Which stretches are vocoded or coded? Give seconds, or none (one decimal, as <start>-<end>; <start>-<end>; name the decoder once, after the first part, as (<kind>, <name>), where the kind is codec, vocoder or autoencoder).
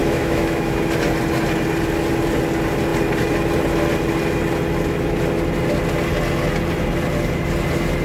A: 0.0-0.8 (autoencoder, DAC-VAE)